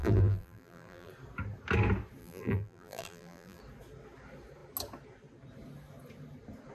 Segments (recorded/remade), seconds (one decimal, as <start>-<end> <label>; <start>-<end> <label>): 0.0-1.1 remade; 1.1-2.2 recorded; 2.2-3.6 remade; 3.6-6.7 recorded